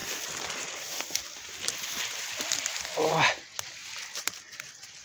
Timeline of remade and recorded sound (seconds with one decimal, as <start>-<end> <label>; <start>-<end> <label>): 0.0-5.0 recorded